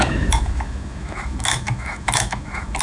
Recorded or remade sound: remade